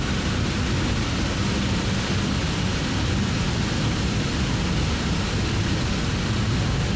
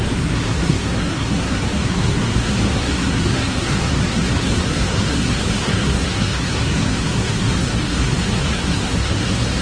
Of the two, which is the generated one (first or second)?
second